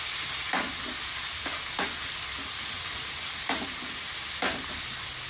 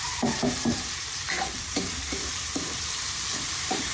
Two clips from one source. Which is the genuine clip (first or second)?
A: first